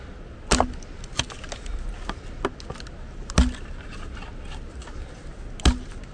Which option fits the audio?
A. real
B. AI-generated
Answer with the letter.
A